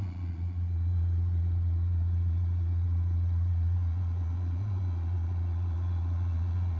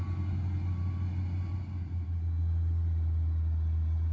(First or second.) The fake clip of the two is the first